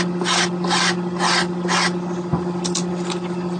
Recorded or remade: recorded